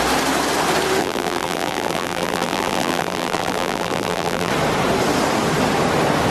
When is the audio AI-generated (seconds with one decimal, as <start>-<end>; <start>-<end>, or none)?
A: 1.0-4.5